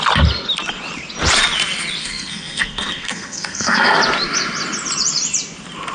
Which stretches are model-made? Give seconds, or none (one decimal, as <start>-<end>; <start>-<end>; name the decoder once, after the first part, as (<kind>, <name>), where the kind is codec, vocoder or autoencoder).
2.0-4.0 (codec, SNAC)

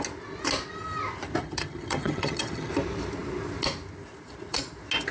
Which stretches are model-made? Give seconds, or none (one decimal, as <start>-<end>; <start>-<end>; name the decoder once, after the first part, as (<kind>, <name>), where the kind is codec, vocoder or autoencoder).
1.4-2.7 (vocoder, HiFi-GAN)

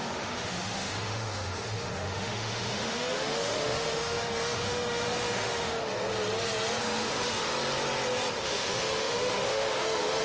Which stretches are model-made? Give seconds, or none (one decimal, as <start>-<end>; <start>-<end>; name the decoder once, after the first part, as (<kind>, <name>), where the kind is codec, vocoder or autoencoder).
0.0-5.9 (autoencoder, DAC-VAE); 6.8-7.5; 8.4-10.2

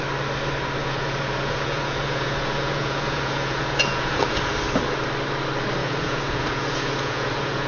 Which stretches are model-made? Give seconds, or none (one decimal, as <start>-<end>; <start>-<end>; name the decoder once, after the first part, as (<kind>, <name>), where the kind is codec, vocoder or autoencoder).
0.8-4.5 (vocoder, Vocos); 5.8-7.7

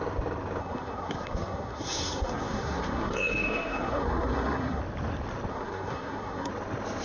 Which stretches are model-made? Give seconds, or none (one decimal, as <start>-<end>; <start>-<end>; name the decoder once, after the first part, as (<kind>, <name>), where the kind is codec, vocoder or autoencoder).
0.6-4.8 (codec, SNAC); 5.5-6.5

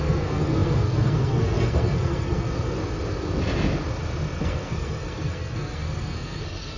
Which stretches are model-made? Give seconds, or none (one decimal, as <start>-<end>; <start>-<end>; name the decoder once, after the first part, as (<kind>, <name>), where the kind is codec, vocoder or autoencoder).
0.0-2.8 (codec, SNAC); 4.4-6.8

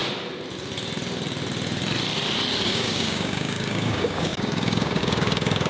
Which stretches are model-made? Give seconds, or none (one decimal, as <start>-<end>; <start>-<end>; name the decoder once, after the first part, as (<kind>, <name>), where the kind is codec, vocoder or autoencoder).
2.6-5.7 (codec, DAC)

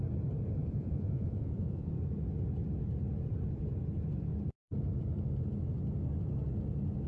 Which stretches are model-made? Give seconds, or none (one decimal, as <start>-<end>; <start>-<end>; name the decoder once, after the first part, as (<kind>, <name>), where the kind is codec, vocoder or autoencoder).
0.6-1.9 (vocoder, Vocos)